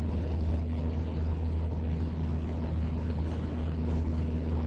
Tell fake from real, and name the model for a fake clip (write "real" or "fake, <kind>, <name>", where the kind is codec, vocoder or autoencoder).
fake, codec, HILCodec